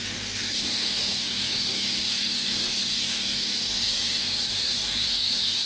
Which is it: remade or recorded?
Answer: remade